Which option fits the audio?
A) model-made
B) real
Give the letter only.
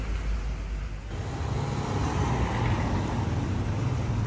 B